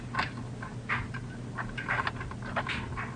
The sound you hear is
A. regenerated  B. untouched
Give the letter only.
B